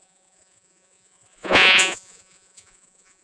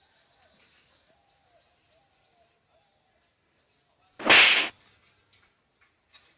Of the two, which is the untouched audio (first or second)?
second